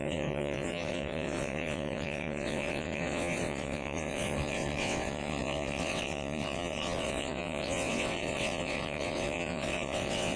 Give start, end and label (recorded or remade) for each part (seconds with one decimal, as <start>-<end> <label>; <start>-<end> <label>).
0.0-10.4 remade